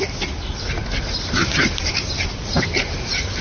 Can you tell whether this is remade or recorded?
remade